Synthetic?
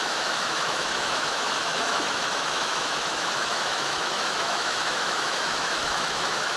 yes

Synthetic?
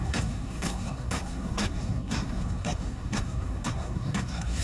yes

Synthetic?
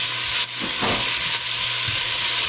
no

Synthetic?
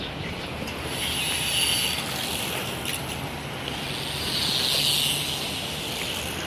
no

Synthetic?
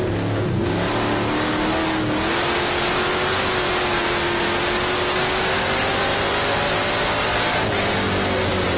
no